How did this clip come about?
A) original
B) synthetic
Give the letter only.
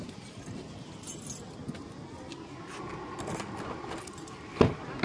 A